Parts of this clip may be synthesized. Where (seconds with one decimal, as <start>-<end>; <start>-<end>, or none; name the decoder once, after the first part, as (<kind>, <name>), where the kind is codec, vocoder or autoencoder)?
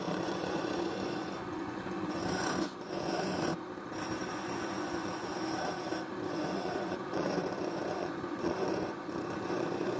0.0-3.5 (vocoder, Vocos); 4.3-5.3; 6.3-10.0